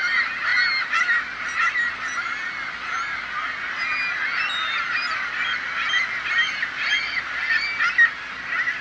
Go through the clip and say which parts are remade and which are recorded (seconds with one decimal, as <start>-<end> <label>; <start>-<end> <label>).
0.0-8.8 recorded

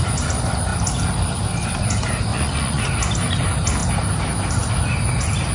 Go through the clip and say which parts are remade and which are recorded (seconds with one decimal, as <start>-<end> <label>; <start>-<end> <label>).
0.0-2.3 recorded; 2.3-2.8 remade; 2.8-5.5 recorded

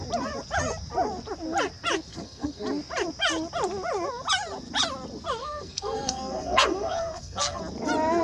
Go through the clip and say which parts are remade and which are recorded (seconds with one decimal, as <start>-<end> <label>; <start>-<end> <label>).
0.0-2.1 recorded; 2.1-2.6 remade; 2.6-5.4 recorded; 5.4-7.6 remade; 7.6-8.2 recorded

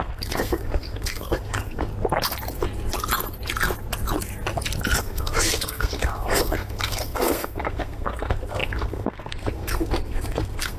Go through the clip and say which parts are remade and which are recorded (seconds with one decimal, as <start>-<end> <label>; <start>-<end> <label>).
0.0-1.9 remade; 1.9-5.0 recorded; 5.0-10.8 remade

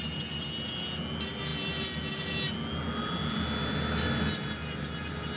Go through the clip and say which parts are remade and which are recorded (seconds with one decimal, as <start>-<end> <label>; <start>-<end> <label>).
0.0-5.4 recorded

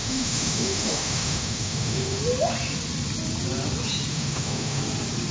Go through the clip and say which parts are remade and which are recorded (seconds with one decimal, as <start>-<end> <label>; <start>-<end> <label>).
0.0-2.2 remade; 2.2-4.1 recorded; 4.1-4.8 remade; 4.8-5.3 recorded

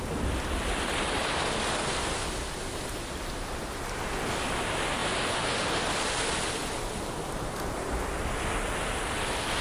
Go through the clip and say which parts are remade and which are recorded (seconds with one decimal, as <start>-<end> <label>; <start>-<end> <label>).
0.0-9.6 recorded

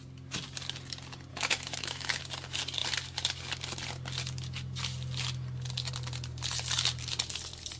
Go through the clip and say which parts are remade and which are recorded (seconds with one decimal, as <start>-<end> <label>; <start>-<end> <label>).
0.0-1.3 recorded; 1.3-2.2 remade; 2.2-7.8 recorded